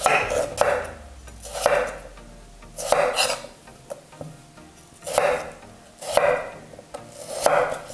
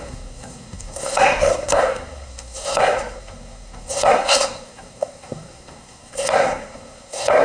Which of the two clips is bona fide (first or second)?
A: first